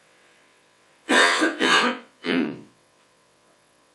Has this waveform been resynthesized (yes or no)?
yes